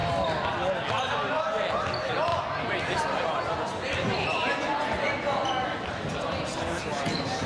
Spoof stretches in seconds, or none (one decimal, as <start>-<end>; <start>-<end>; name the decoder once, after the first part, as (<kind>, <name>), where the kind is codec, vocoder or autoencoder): none